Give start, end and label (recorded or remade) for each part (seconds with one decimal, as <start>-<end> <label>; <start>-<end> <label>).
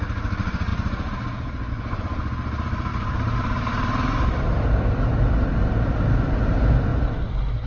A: 0.0-2.9 recorded; 2.9-4.4 remade; 4.4-7.7 recorded